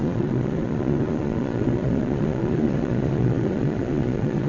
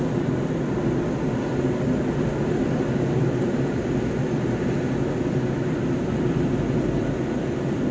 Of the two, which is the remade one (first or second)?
first